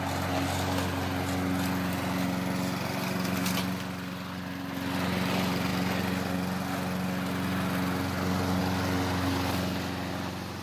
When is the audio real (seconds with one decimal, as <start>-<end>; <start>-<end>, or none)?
0.0-10.6